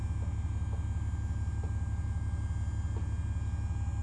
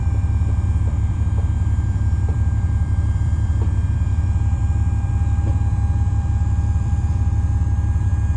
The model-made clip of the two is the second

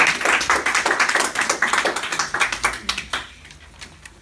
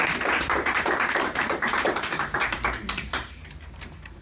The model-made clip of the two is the second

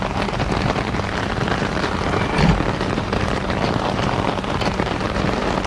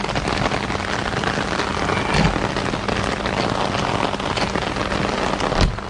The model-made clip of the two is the first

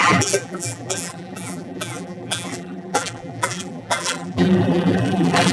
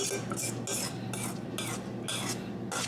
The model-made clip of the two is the first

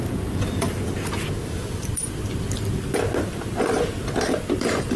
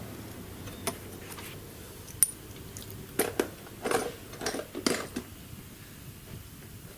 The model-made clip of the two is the first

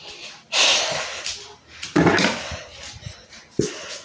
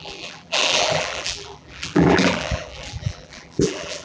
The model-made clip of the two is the second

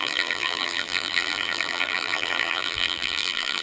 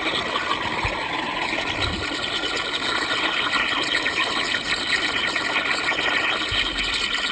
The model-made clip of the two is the first